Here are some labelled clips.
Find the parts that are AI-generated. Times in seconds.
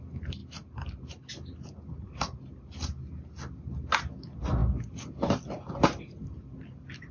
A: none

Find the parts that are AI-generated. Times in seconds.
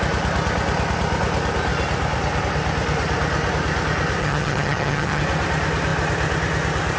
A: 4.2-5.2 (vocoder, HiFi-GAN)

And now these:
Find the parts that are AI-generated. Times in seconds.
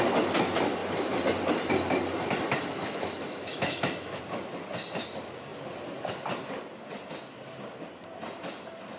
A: 2.7-4.2 (autoencoder, DAC-VAE)